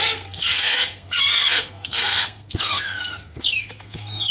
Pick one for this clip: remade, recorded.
remade